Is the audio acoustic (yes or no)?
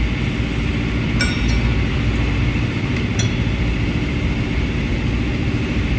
yes